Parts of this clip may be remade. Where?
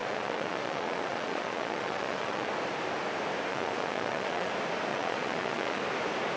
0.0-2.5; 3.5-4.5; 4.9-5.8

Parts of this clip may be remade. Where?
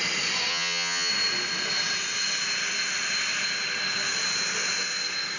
0.5-1.1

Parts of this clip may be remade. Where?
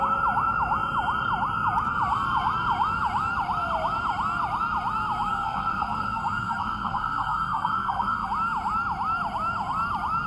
5.3-8.3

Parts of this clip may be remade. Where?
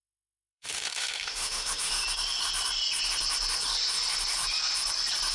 0.0-2.0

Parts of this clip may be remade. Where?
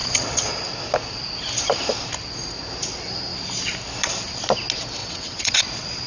0.0-0.5; 5.0-5.6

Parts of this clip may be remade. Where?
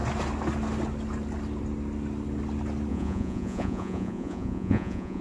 2.9-5.2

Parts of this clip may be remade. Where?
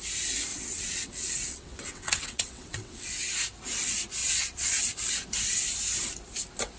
0.5-3.1; 4.2-4.8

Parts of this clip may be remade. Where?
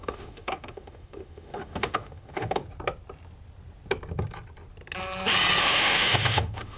0.0-2.6; 5.6-6.8